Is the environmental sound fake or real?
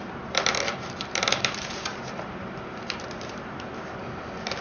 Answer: fake